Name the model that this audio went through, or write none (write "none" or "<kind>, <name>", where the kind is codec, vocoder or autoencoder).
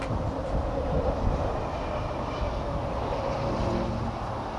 none